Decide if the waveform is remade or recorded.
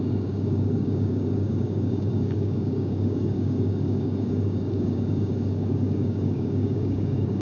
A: remade